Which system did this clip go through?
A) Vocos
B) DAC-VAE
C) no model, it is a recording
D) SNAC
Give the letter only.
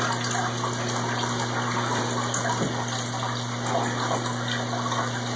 C